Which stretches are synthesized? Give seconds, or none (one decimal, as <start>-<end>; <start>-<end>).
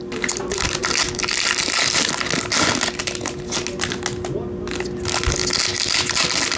none